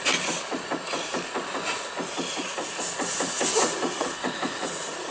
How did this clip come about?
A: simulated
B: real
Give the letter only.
A